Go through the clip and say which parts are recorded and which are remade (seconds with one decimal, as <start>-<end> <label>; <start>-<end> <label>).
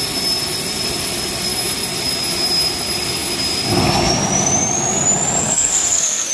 0.0-5.4 recorded; 5.4-6.3 remade